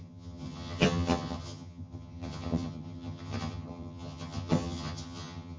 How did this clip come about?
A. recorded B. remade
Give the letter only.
B